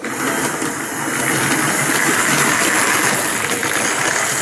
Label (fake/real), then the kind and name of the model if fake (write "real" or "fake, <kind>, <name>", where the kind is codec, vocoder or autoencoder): real